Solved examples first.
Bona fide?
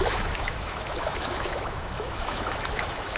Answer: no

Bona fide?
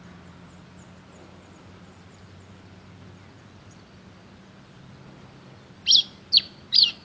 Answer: yes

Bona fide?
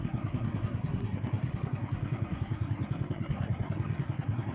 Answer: no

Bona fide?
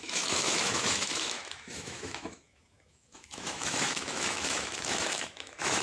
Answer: no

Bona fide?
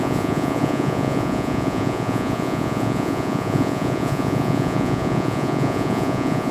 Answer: no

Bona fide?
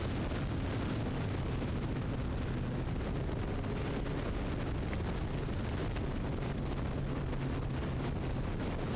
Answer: yes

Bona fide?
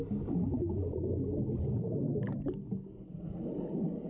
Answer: yes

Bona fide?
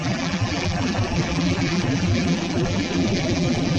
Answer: no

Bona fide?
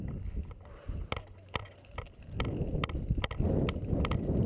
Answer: yes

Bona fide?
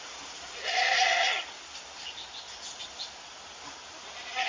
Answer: yes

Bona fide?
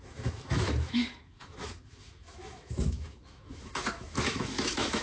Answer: no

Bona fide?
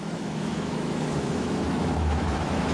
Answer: no